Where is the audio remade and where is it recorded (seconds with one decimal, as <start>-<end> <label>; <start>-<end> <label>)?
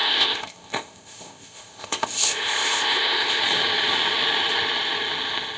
0.0-3.4 remade; 3.4-5.6 recorded